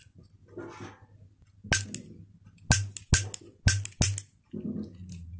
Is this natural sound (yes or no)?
yes